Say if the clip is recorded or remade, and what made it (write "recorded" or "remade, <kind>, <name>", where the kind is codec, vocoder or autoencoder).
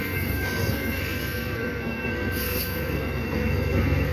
remade, codec, SNAC